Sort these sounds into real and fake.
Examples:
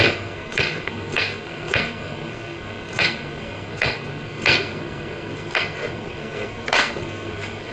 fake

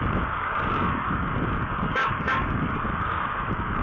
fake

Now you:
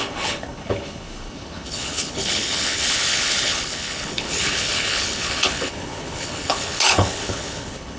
fake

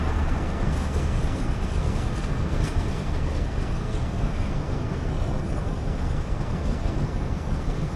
fake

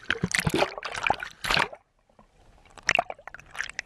real